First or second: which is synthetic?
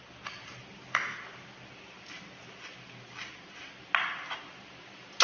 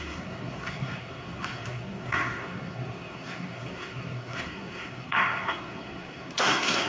second